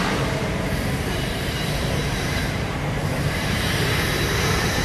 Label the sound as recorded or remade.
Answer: remade